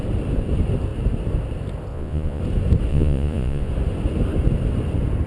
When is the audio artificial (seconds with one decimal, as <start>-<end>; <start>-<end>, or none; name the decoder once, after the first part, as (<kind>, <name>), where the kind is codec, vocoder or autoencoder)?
1.9-2.4 (vocoder, Vocos); 2.9-3.7